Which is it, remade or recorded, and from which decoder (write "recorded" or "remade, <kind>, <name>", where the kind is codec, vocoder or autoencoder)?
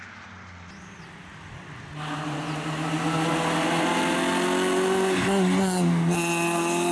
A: recorded